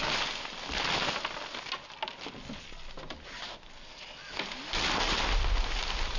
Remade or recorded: recorded